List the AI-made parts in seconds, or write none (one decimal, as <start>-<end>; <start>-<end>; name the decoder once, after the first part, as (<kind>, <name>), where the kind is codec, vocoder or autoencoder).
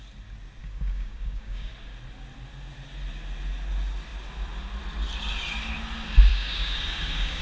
0.6-1.7 (codec, DAC); 6.3-7.4